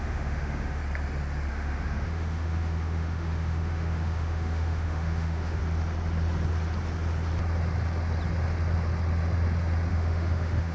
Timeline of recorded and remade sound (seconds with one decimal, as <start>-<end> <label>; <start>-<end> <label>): 0.0-0.8 remade; 0.8-1.5 recorded; 1.5-5.6 remade; 5.6-9.9 recorded; 9.9-10.7 remade